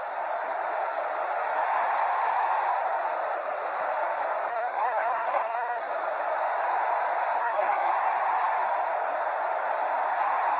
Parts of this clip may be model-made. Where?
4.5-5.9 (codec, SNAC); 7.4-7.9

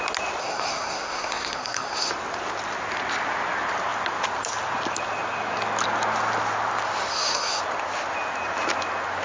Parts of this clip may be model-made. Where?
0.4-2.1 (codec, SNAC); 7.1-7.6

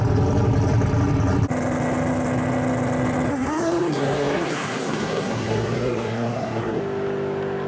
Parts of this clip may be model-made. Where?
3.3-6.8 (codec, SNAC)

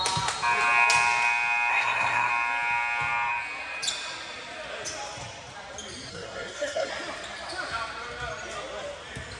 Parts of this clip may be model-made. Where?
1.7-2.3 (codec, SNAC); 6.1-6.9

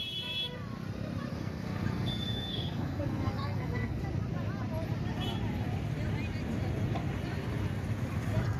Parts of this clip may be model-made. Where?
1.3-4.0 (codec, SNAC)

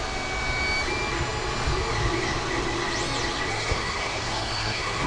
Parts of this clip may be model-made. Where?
3.5-5.1 (codec, SNAC)

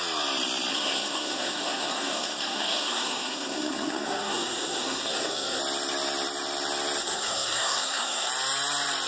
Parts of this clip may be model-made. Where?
0.7-5.6 (codec, SNAC); 7.0-8.3